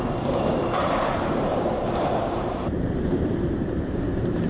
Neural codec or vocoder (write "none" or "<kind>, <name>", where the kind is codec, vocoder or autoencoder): vocoder, BigVGAN v2